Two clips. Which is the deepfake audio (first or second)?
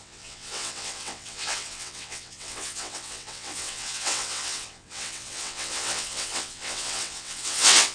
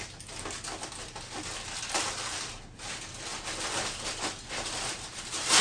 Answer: first